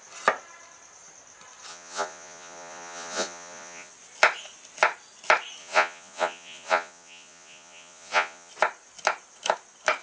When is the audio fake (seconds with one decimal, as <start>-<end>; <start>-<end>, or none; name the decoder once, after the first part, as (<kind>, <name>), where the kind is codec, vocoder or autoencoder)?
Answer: 1.7-3.9 (vocoder, Vocos); 5.6-8.5